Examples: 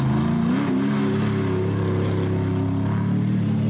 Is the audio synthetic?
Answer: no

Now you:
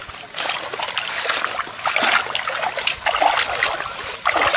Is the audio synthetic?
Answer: no